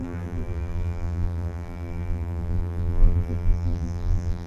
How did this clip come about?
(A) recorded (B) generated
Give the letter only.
B